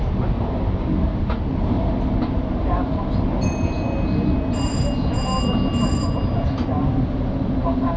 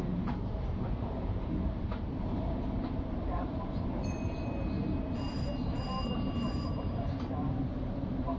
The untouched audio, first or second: first